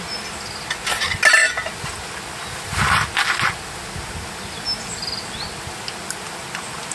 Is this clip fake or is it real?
real